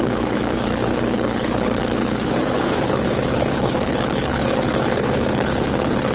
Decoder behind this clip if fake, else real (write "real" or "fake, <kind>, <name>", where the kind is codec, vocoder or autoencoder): fake, codec, HILCodec